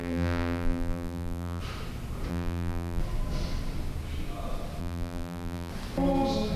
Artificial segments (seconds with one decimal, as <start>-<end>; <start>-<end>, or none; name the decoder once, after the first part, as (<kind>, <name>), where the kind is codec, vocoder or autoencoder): 0.0-1.6 (vocoder, BigVGAN v2); 2.3-3.0; 4.8-5.7